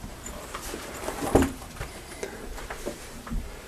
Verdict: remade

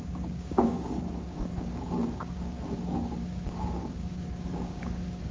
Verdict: remade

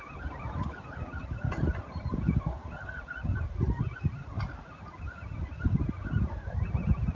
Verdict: recorded